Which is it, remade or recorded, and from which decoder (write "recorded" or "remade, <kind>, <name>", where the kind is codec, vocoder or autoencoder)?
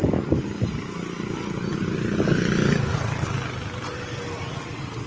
recorded